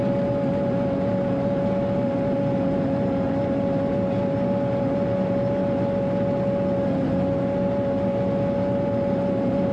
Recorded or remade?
recorded